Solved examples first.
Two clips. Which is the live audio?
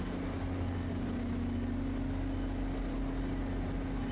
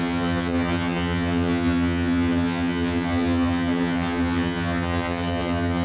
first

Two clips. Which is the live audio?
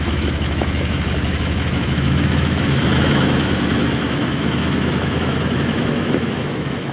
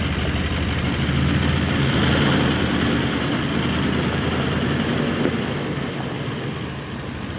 second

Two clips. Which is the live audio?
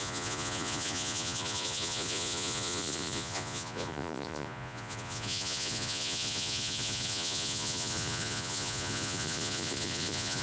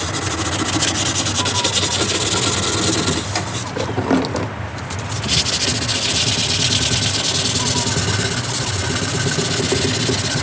second